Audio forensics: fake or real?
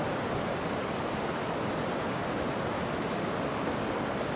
real